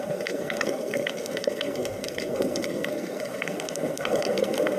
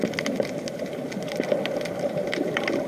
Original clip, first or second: second